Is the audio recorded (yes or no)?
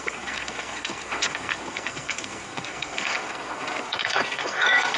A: no